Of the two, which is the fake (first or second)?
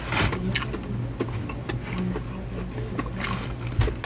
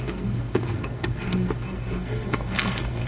second